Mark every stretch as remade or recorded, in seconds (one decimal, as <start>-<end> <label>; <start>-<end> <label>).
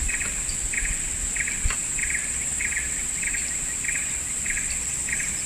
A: 0.0-5.5 recorded